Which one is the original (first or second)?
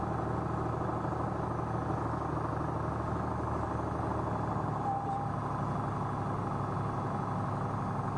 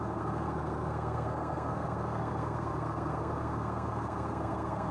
first